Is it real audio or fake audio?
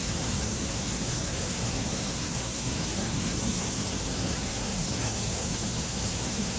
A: fake